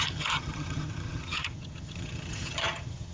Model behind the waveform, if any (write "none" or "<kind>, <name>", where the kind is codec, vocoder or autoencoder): vocoder, HiFi-GAN